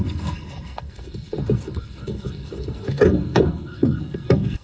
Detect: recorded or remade remade